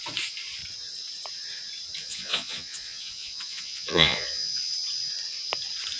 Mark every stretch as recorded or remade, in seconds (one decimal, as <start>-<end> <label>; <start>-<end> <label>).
0.0-2.0 recorded; 2.0-4.7 remade; 4.7-6.0 recorded